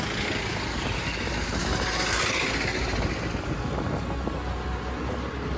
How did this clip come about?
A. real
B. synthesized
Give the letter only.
A